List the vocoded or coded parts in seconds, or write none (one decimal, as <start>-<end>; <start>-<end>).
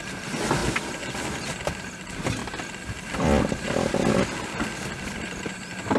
0.0-0.6; 1.3-2.4; 5.0-6.0